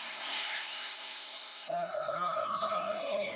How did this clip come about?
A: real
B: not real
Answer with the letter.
B